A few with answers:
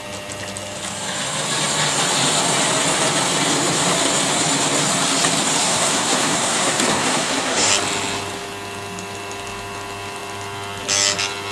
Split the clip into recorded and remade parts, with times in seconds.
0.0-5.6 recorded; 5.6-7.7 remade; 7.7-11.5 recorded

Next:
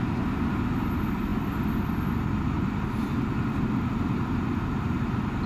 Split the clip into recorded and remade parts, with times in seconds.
0.0-5.5 recorded

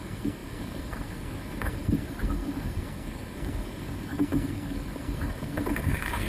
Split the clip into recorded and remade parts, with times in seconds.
0.0-6.3 remade

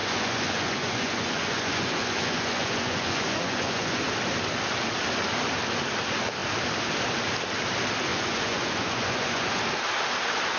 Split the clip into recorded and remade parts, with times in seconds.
0.0-4.0 remade; 4.0-8.1 recorded; 8.1-9.6 remade; 9.6-10.6 recorded

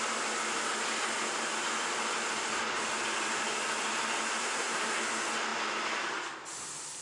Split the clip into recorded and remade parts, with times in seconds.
0.0-4.4 recorded; 4.4-5.0 remade; 5.0-7.0 recorded

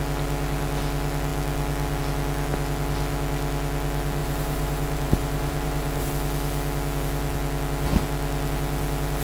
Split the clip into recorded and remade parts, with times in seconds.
0.0-4.2 recorded; 4.2-6.1 remade; 6.1-9.2 recorded

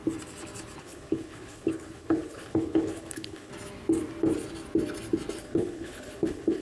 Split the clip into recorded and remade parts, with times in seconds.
0.0-0.8 recorded; 0.8-3.5 remade; 3.5-5.4 recorded; 5.4-6.6 remade